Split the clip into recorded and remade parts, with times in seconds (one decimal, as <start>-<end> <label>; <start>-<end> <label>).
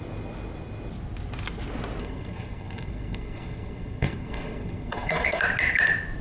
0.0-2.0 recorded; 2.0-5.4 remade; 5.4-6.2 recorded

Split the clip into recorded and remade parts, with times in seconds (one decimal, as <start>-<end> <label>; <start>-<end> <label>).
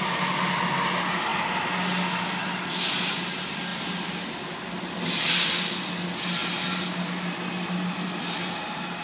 0.0-9.0 recorded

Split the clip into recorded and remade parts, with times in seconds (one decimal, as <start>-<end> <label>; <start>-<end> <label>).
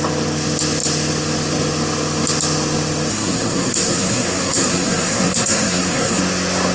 0.0-3.1 recorded; 3.1-6.2 remade; 6.2-6.7 recorded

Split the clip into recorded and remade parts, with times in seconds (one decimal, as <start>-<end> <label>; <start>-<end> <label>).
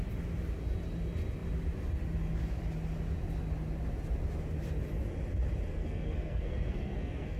0.0-5.7 recorded; 5.7-7.4 remade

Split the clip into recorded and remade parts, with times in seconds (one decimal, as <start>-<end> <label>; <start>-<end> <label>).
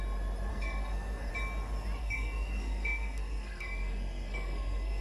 0.0-0.5 recorded; 0.5-1.3 remade; 1.3-2.0 recorded; 2.0-5.0 remade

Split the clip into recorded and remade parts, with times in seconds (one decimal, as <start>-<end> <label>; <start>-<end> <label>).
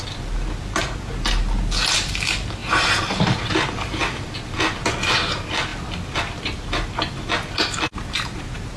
0.0-8.8 recorded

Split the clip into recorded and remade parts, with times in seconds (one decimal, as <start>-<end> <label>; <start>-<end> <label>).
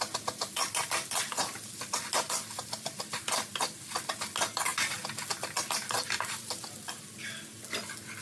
0.0-8.2 recorded